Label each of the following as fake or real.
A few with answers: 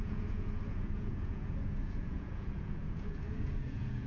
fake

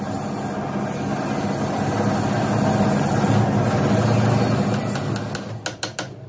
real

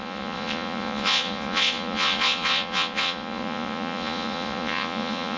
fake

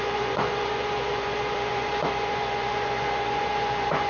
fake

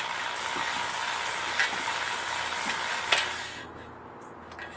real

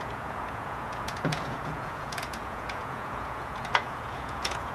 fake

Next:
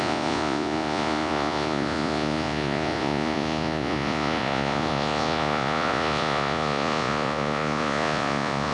fake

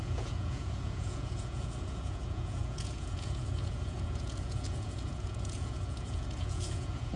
fake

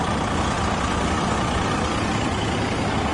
real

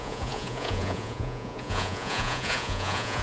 fake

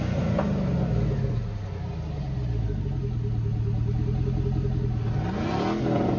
real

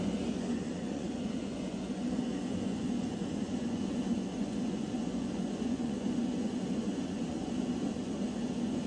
fake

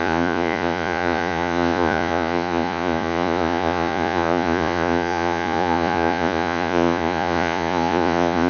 fake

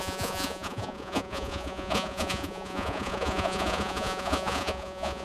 fake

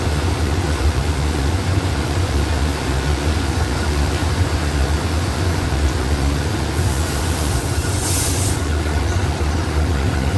fake